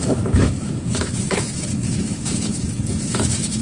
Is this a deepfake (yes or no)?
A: yes